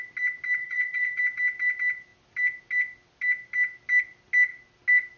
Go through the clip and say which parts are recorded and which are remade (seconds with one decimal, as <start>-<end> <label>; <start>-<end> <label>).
0.0-0.6 recorded; 0.6-1.2 remade; 1.2-5.2 recorded